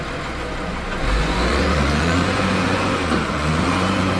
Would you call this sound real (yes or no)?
no